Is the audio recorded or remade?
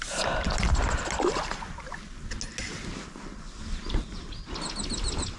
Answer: recorded